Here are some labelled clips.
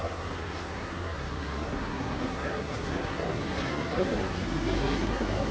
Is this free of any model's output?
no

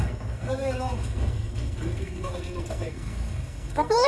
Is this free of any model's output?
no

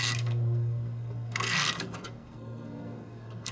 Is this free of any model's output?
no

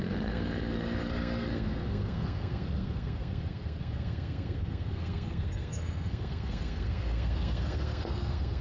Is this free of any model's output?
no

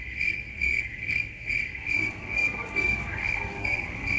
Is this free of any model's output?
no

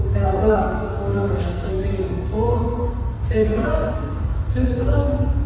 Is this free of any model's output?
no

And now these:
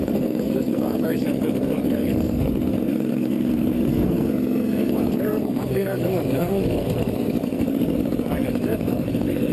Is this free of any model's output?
no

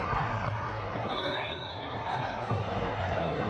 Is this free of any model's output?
no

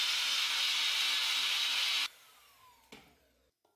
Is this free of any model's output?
yes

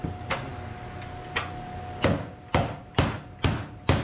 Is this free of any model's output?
yes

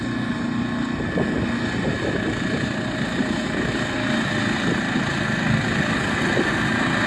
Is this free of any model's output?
yes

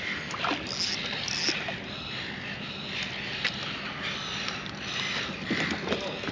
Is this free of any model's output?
yes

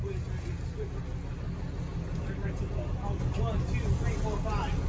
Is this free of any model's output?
yes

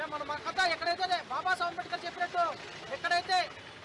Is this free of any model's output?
yes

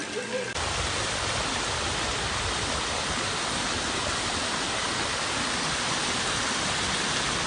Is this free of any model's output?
yes